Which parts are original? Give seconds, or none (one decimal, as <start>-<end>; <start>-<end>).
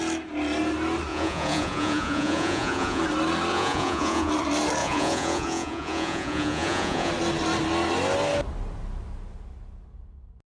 0.0-1.1; 3.0-3.5; 4.3-4.8; 7.1-10.5